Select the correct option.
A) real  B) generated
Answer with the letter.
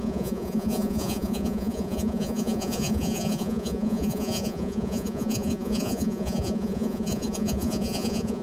B